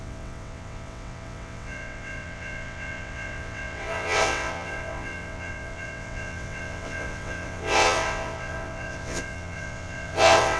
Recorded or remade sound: remade